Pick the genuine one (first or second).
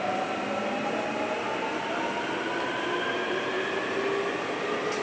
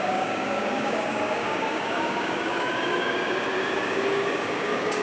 first